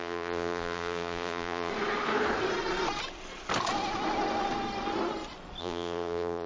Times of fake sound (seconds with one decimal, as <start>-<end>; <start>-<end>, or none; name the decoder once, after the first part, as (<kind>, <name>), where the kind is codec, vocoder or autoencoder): 0.0-1.7 (vocoder, BigVGAN v2); 5.6-6.5